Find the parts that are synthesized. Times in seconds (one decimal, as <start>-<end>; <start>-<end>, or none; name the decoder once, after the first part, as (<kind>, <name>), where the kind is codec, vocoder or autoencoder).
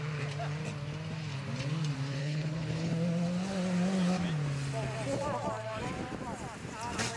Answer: 2.2-2.9 (codec, HILCodec)